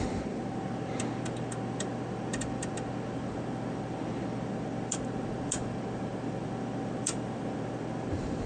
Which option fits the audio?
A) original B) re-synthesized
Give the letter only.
B